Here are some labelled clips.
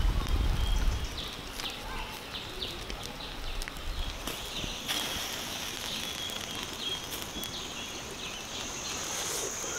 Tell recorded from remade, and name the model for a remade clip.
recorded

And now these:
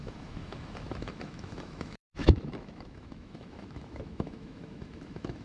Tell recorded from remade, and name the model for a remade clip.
remade, autoencoder, DAC-VAE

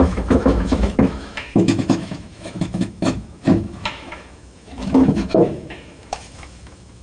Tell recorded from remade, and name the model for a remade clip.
remade, autoencoder, DAC-VAE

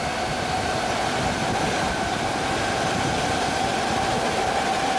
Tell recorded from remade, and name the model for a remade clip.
recorded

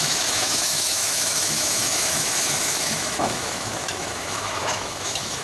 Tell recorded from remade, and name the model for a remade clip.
remade, autoencoder, DAC-VAE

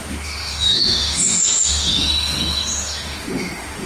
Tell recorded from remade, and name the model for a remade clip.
remade, autoencoder, DAC-VAE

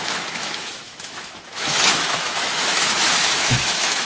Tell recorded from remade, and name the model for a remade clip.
remade, autoencoder, DAC-VAE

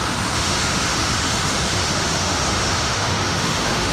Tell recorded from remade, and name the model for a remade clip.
remade, autoencoder, DAC-VAE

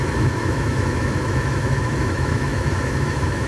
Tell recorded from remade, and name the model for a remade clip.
remade, autoencoder, DAC-VAE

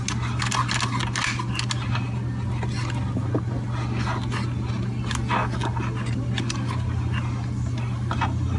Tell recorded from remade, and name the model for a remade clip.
recorded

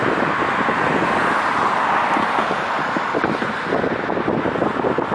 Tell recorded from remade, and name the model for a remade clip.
recorded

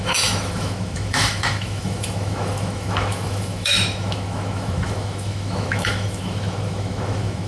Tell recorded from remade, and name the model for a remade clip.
remade, autoencoder, DAC-VAE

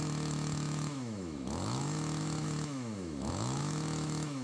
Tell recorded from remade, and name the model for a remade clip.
remade, autoencoder, DAC-VAE